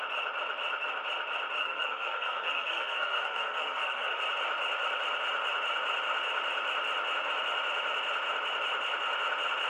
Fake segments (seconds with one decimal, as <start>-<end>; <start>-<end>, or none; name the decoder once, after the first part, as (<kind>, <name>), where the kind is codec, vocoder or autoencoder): 1.6-4.2 (codec, SNAC)